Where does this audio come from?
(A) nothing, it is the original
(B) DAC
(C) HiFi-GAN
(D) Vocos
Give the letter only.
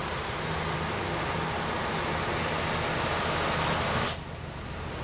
A